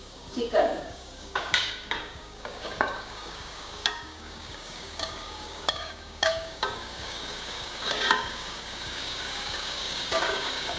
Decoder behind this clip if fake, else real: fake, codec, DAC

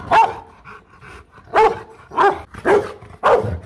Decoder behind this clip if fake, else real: real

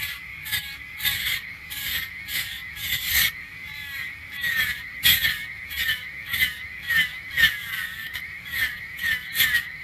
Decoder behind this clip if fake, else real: fake, codec, DAC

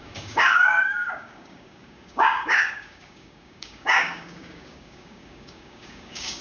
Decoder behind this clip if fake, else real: fake, codec, DAC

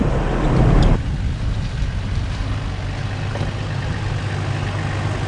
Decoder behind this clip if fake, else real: real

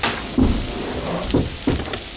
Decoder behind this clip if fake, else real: real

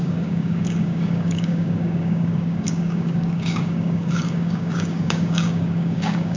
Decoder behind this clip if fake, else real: fake, codec, DAC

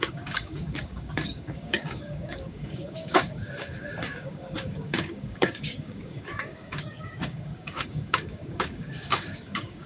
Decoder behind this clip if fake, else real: fake, codec, DAC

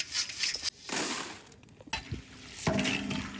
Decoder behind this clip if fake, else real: real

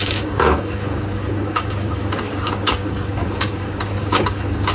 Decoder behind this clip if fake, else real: fake, codec, DAC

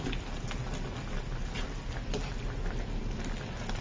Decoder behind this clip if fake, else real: real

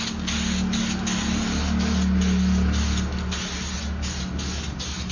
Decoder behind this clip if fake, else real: real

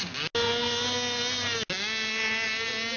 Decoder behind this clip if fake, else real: real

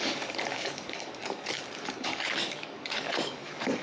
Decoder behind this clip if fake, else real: fake, codec, DAC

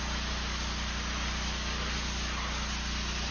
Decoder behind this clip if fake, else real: real